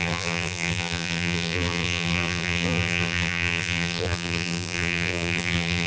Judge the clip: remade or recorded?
remade